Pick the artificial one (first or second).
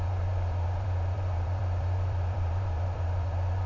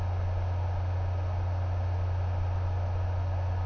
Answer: first